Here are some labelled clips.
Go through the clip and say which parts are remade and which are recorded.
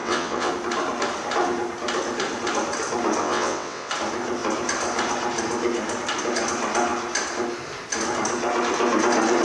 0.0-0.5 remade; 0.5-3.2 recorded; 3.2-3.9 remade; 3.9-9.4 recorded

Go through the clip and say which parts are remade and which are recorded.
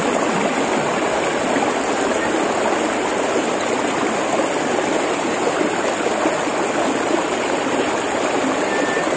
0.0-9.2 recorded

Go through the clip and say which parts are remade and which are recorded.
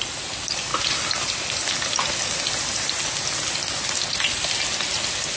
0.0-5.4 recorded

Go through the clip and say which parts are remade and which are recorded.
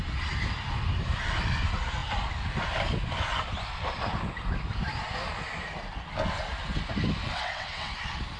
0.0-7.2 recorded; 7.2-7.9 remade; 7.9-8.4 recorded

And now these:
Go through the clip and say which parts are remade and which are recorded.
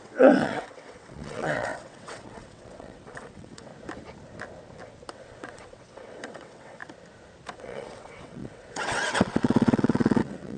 0.0-3.7 remade; 3.7-5.1 recorded; 5.1-6.8 remade; 6.8-7.5 recorded; 7.5-10.6 remade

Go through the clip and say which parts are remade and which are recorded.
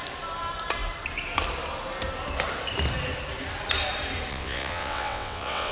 0.0-4.3 recorded; 4.3-5.7 remade